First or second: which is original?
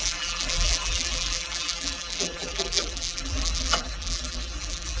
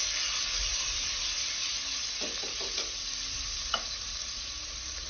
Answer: second